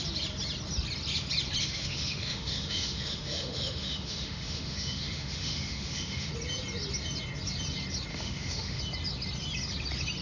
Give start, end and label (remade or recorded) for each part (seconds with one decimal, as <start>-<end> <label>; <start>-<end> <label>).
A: 0.0-1.6 recorded; 1.6-6.3 remade; 6.3-8.1 recorded; 8.1-8.8 remade; 8.8-10.2 recorded